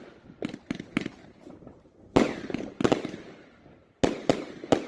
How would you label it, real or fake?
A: real